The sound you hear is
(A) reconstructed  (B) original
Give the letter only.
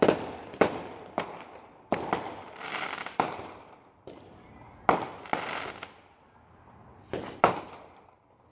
B